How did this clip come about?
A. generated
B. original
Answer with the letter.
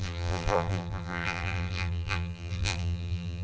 A